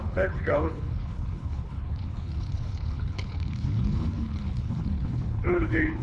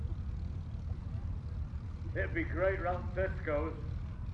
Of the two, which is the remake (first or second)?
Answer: first